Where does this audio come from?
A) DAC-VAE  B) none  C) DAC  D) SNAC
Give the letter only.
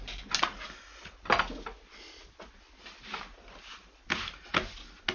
B